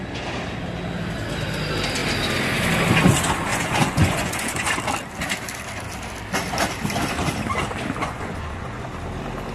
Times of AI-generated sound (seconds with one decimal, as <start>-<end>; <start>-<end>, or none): 3.5-4.8; 8.0-8.9